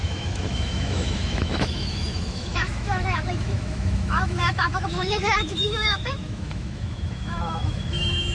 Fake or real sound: fake